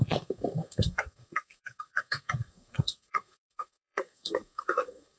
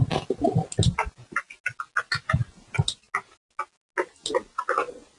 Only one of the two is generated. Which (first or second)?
first